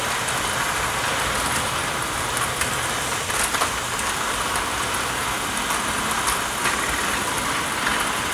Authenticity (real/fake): real